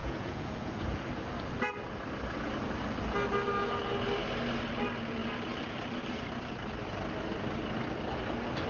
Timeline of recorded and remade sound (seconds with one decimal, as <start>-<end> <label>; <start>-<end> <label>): 0.0-1.1 remade; 1.1-8.7 recorded